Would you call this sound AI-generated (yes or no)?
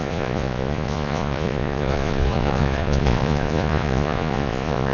yes